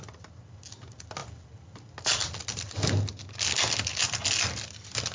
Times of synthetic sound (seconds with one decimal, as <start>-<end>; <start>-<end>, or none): none